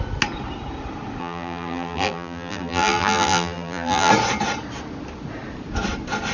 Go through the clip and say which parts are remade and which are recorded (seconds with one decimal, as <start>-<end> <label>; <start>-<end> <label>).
0.0-1.2 recorded; 1.2-4.1 remade; 4.1-6.3 recorded